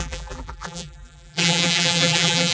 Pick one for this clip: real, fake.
fake